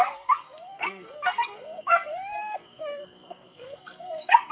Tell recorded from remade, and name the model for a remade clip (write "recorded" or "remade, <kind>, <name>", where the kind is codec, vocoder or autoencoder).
remade, codec, SNAC